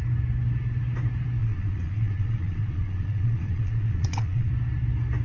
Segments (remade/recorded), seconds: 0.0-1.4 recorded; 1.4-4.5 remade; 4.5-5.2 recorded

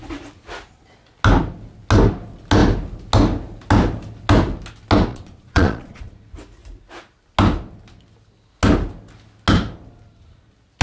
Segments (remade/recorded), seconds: 0.0-5.1 recorded; 5.1-6.1 remade; 6.1-10.8 recorded